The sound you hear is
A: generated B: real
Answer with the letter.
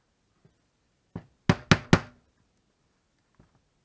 B